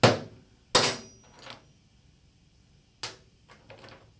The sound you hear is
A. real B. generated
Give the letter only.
A